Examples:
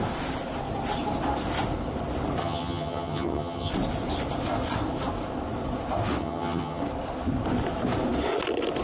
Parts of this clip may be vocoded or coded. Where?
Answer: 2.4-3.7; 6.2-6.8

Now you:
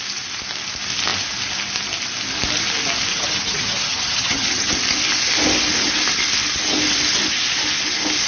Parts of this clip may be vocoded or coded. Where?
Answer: 3.1-4.7

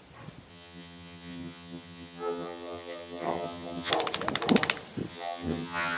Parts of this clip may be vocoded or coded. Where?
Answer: 0.5-3.9; 5.1-6.0